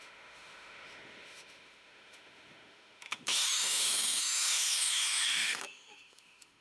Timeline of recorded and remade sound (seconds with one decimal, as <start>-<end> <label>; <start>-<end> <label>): 0.0-6.6 remade

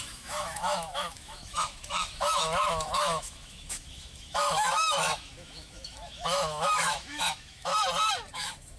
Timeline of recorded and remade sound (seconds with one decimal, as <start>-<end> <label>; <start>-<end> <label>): 0.0-7.7 remade; 7.7-8.3 recorded; 8.3-8.8 remade